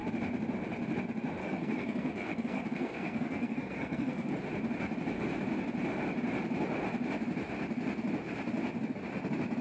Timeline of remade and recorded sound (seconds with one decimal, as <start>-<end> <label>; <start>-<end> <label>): 0.0-1.4 recorded; 1.4-4.3 remade; 4.3-9.6 recorded